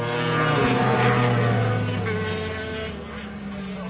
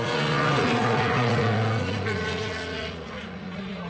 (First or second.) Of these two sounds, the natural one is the first